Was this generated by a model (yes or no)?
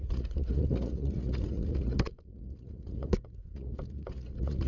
yes